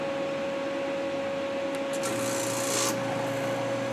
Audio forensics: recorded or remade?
recorded